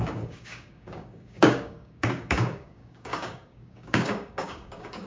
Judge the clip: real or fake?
fake